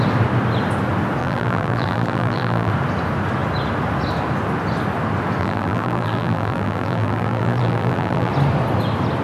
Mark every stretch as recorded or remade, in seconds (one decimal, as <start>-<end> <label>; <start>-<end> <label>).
0.0-1.2 recorded; 1.2-2.7 remade; 2.7-5.4 recorded; 5.4-8.3 remade; 8.3-9.2 recorded